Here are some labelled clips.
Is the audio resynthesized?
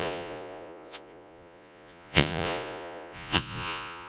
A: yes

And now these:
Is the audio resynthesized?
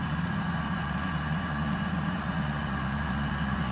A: yes